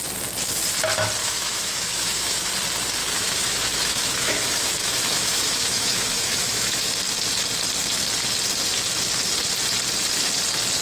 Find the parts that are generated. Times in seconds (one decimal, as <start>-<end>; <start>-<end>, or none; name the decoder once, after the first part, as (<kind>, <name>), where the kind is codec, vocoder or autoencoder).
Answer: 1.2-2.5 (autoencoder, DAC-VAE); 3.0-6.9

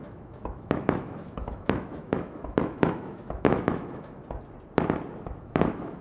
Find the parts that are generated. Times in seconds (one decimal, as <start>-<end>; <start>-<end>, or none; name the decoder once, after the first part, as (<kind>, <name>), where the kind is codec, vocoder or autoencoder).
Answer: 0.0-4.2 (autoencoder, DAC-VAE); 5.4-6.0

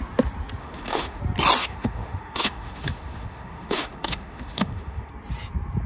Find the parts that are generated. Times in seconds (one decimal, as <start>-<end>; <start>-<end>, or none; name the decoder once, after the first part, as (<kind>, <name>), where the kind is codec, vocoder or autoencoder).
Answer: 0.6-1.2 (autoencoder, DAC-VAE); 1.6-5.1

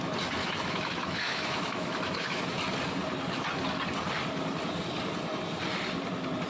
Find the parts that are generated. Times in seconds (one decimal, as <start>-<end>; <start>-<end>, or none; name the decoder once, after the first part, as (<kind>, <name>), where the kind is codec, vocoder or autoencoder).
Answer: 0.4-2.4 (autoencoder, DAC-VAE)

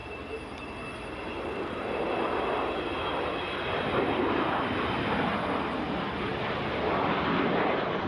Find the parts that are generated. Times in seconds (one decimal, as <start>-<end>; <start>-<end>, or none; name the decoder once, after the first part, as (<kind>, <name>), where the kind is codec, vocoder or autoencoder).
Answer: none